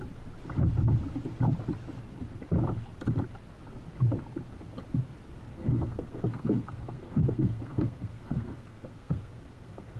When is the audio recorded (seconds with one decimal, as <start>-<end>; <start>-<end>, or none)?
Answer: 0.0-5.5